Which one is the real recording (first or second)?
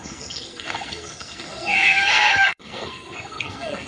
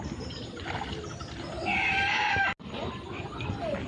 second